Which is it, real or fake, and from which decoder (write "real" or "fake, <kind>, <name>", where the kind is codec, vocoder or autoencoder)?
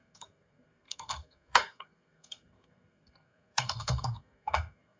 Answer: fake, codec, SNAC